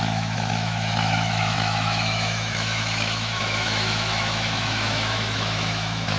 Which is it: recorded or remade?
remade